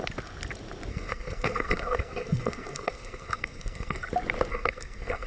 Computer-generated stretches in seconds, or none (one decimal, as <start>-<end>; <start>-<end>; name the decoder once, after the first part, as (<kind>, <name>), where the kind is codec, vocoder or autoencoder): 0.9-4.1 (codec, SNAC); 4.5-5.3